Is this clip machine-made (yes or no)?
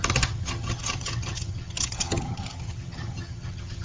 yes